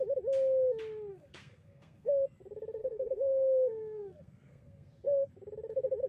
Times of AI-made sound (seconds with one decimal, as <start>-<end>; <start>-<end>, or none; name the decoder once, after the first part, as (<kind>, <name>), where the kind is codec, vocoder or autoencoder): 1.1-2.1 (codec, SNAC); 2.8-5.3

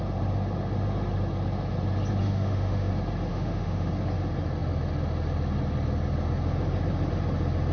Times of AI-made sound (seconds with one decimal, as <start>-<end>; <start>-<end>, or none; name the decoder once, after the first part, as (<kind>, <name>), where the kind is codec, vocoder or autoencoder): 2.2-2.9 (autoencoder, DAC-VAE); 3.3-3.9

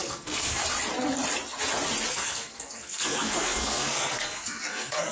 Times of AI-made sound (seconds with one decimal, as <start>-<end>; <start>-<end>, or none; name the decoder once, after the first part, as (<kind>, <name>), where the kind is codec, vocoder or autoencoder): 0.0-0.6 (codec, SNAC); 2.1-5.1

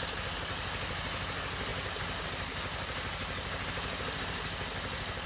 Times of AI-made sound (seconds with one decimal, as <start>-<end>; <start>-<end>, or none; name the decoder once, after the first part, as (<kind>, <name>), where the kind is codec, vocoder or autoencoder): none

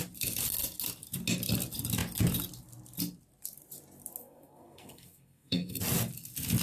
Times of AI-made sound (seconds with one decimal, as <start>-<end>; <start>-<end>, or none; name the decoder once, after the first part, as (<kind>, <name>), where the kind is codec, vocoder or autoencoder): 4.2-5.8 (codec, SNAC)

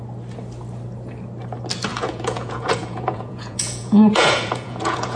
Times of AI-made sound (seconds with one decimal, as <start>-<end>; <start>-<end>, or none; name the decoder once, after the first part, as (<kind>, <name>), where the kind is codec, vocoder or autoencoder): 1.9-5.2 (vocoder, Vocos)

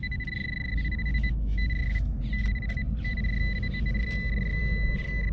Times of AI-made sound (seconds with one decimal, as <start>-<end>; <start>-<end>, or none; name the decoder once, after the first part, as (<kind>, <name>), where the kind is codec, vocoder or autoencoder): 0.0-0.7 (autoencoder, DAC-VAE); 1.1-2.2